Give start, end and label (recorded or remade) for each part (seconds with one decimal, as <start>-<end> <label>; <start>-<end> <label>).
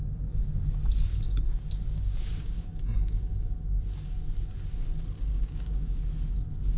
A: 0.0-1.1 recorded; 1.1-3.8 remade; 3.8-5.3 recorded; 5.3-6.0 remade; 6.0-6.8 recorded